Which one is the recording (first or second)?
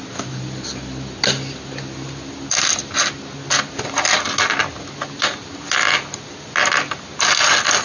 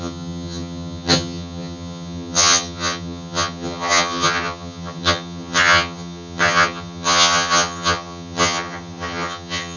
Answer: first